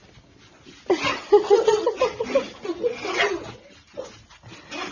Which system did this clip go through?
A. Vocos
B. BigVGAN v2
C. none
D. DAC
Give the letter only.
C